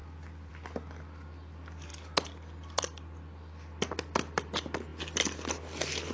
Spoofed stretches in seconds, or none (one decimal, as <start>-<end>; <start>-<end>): none